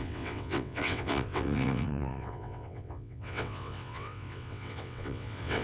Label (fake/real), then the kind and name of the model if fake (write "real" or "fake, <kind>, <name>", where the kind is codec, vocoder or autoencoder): fake, vocoder, WaveNeXt